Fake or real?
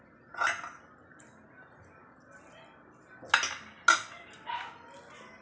real